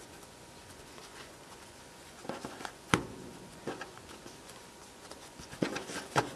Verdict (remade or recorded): remade